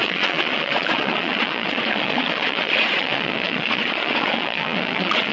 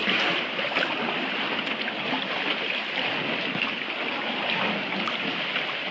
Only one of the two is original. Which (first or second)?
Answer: second